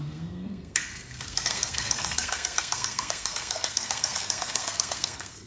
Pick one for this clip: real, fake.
fake